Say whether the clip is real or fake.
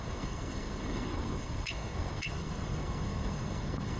fake